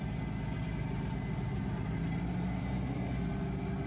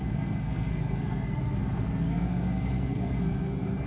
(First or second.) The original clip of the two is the first